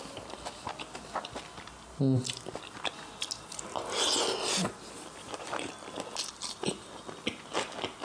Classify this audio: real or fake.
real